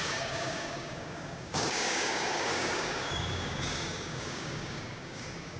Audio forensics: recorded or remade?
remade